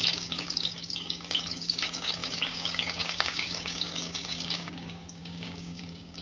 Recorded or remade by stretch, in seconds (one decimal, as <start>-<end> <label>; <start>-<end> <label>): 0.0-6.2 remade